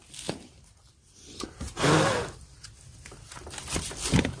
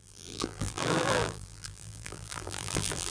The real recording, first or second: first